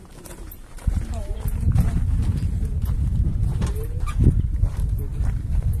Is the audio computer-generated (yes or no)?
yes